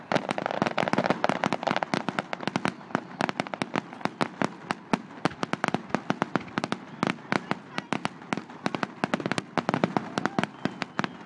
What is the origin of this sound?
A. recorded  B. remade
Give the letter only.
A